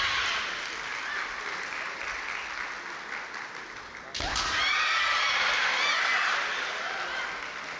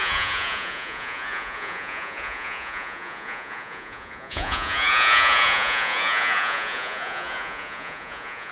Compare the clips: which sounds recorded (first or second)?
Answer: first